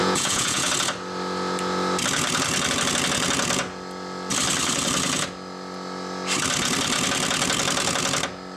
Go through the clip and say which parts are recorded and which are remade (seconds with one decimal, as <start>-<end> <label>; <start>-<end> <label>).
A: 0.0-0.7 remade; 0.7-8.6 recorded

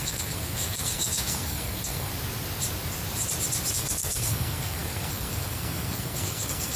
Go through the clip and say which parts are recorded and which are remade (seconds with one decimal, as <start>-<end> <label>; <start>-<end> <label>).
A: 0.0-2.1 remade; 2.1-3.7 recorded; 3.7-6.8 remade